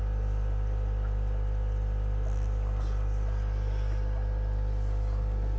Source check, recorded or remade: recorded